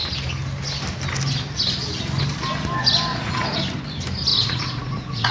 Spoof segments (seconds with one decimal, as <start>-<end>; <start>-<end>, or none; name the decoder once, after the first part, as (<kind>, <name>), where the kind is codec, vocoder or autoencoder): 3.1-3.6 (vocoder, Vocos); 4.3-5.3